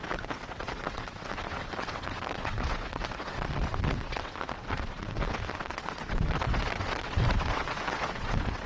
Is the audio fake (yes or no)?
yes